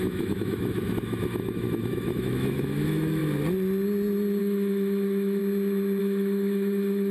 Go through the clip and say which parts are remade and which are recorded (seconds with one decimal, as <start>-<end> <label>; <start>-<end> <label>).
0.0-3.2 remade; 3.2-4.4 recorded; 4.4-5.4 remade; 5.4-6.0 recorded; 6.0-7.1 remade